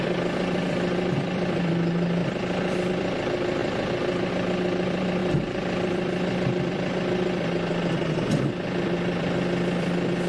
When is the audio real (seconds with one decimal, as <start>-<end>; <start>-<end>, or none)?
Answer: 3.6-4.3